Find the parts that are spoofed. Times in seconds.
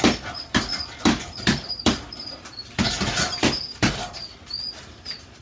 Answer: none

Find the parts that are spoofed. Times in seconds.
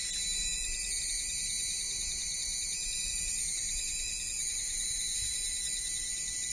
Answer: none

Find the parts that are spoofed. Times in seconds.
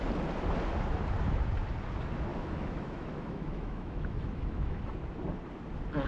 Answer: 2.3-4.8 (autoencoder, DAC-VAE)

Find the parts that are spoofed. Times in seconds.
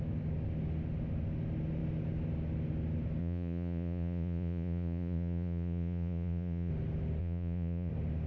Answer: 3.2-6.7 (vocoder, Vocos); 7.2-7.9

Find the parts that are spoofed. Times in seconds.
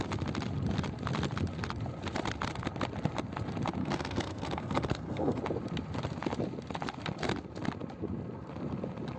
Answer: 3.8-5.4 (codec, SNAC)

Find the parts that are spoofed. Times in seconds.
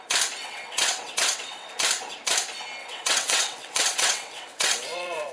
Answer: 0.4-1.7 (vocoder, WaveNeXt); 2.8-5.3